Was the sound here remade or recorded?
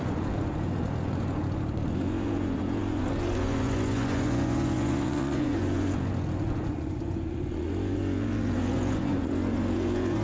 remade